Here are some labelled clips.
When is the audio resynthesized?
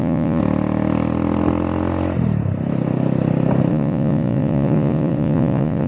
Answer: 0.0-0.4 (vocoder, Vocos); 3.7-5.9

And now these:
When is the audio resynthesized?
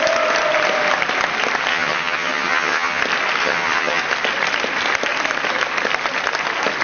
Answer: 1.7-3.0 (vocoder, HiFi-GAN); 3.4-4.0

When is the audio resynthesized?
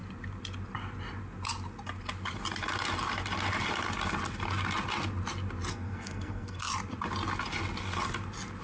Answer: 5.7-6.7 (codec, SNAC)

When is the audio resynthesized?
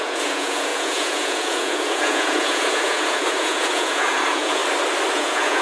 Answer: 0.0-4.6 (vocoder, Vocos); 5.1-5.6